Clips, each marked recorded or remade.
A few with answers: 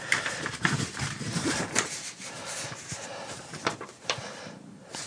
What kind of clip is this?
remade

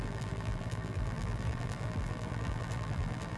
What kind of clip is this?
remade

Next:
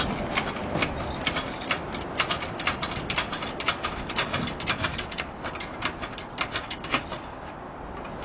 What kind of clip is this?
recorded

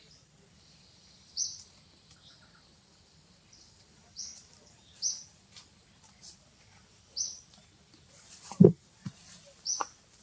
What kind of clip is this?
remade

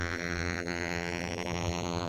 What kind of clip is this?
remade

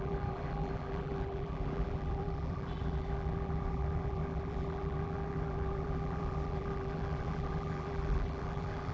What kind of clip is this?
remade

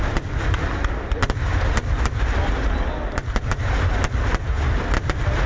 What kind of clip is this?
recorded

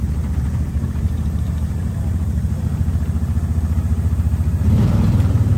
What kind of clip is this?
remade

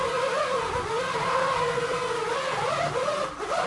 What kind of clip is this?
recorded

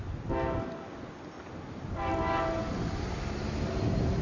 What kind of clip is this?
recorded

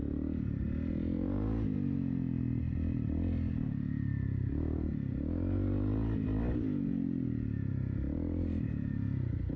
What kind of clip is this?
recorded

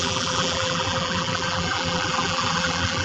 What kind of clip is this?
remade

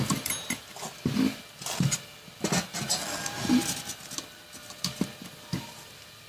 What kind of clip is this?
recorded